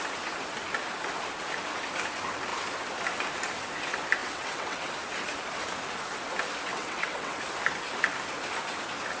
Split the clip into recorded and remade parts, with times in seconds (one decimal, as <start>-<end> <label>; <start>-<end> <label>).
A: 0.0-4.2 recorded; 4.2-4.9 remade; 4.9-6.7 recorded; 6.7-7.4 remade; 7.4-9.2 recorded